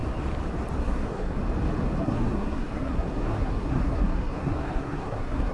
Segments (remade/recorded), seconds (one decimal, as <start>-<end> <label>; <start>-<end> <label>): 0.0-0.8 recorded; 0.8-1.4 remade; 1.4-2.0 recorded; 2.0-5.5 remade